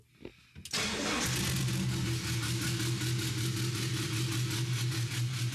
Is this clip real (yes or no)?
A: yes